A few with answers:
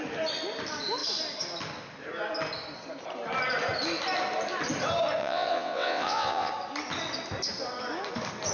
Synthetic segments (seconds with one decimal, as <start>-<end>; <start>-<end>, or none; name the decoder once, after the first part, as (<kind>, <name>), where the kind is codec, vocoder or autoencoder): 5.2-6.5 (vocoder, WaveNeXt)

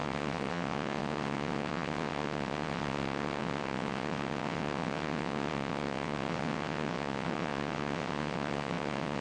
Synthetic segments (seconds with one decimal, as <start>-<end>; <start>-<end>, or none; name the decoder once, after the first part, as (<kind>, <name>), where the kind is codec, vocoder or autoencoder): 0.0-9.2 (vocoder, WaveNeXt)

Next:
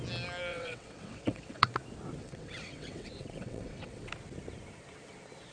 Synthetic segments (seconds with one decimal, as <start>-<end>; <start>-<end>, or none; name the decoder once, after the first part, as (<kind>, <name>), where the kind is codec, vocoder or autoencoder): 0.5-1.7 (vocoder, WaveNeXt); 2.2-4.1